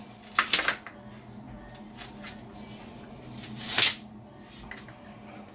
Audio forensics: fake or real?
real